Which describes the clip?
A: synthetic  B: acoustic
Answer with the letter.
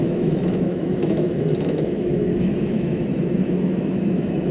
A